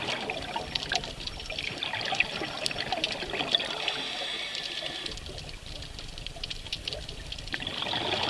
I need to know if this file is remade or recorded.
recorded